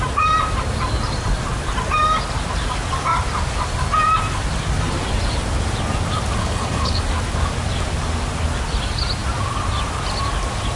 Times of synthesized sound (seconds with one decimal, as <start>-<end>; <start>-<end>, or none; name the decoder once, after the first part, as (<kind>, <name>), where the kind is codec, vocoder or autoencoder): 6.4-7.0 (codec, HILCodec)